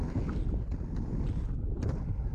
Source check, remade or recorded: recorded